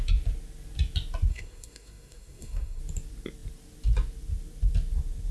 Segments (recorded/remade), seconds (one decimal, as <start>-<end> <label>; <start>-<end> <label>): 0.0-1.3 recorded; 1.3-2.8 remade; 2.8-5.3 recorded